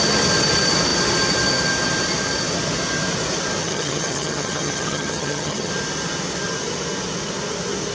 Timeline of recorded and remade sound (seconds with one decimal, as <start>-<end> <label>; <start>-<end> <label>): 0.0-3.6 recorded; 3.6-5.7 remade; 5.7-7.9 recorded